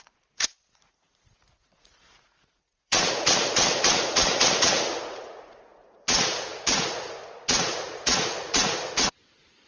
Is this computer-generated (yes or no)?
yes